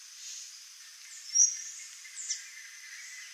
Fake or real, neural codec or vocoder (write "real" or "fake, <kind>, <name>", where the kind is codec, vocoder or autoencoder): real